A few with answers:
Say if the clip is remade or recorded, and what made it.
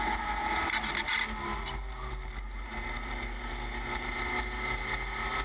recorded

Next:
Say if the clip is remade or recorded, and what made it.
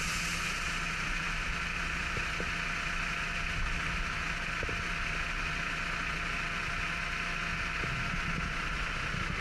recorded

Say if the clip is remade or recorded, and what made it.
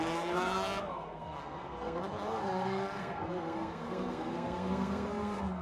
remade, codec, SNAC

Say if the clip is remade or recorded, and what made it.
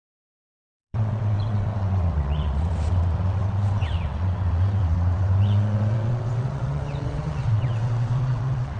remade, vocoder, WaveNeXt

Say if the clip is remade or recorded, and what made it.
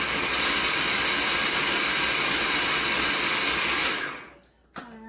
recorded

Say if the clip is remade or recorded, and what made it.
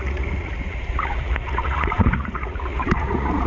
remade, vocoder, Vocos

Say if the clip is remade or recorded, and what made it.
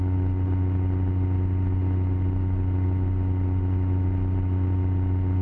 recorded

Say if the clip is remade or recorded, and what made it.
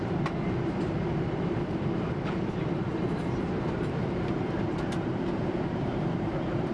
remade, vocoder, BigVGAN v2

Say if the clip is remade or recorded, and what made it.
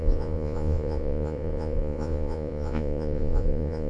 remade, vocoder, Vocos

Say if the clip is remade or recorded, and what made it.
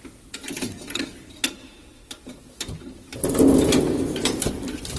recorded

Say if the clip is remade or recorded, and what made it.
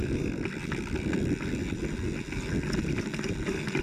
recorded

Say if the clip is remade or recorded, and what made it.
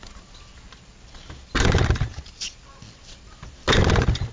recorded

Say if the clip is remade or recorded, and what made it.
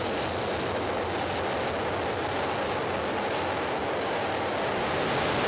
recorded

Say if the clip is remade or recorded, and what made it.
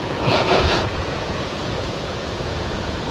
remade, vocoder, Vocos